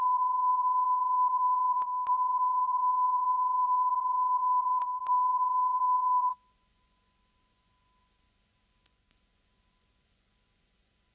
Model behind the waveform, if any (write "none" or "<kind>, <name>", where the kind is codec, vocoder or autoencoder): vocoder, Vocos